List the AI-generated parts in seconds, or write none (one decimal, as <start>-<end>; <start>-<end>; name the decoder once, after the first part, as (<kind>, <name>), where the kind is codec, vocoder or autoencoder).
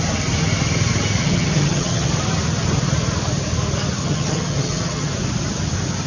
1.2-2.1 (vocoder, HiFi-GAN); 4.0-5.1